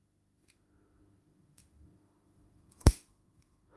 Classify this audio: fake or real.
fake